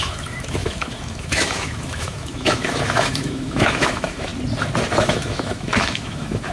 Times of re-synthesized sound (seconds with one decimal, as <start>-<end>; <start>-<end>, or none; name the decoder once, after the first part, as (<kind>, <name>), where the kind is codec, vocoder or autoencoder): 0.0-4.3 (autoencoder, DAC-VAE); 5.0-6.5